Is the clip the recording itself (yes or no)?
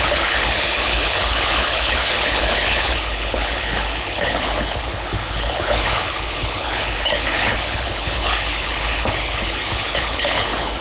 no